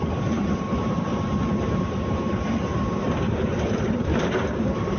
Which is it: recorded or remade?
remade